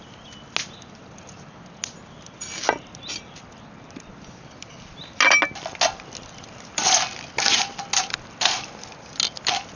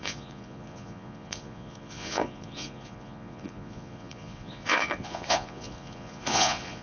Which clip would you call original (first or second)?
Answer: first